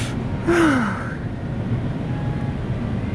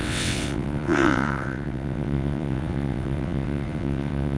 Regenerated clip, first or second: second